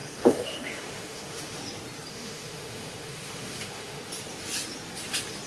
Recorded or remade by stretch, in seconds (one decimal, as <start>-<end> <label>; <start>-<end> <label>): 0.0-1.6 remade; 1.6-2.1 recorded; 2.1-4.0 remade; 4.0-5.5 recorded